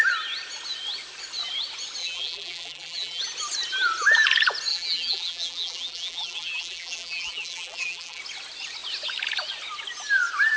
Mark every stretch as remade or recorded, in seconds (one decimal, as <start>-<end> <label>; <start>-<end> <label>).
0.0-2.0 recorded; 2.0-3.2 remade; 3.2-4.7 recorded; 4.7-8.2 remade; 8.2-10.6 recorded